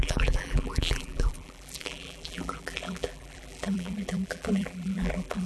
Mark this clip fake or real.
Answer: fake